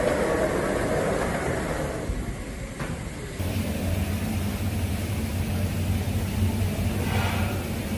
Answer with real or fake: real